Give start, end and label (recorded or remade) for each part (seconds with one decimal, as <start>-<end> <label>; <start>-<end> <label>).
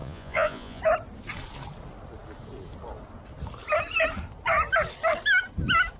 0.0-0.8 remade; 0.8-6.0 recorded